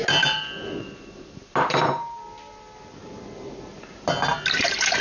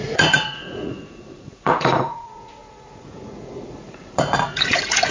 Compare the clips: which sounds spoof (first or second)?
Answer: second